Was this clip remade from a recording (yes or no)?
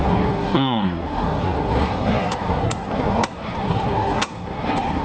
yes